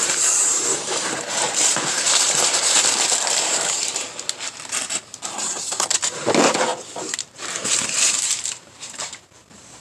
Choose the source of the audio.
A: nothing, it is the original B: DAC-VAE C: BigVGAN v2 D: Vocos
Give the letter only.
C